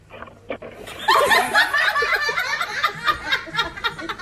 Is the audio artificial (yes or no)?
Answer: no